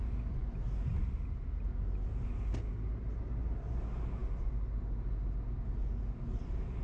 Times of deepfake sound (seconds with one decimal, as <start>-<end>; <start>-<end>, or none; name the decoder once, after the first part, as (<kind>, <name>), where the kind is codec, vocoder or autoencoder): none